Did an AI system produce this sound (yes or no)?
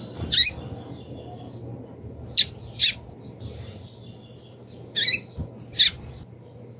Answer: no